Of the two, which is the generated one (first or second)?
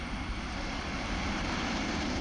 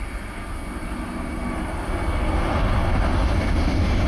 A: first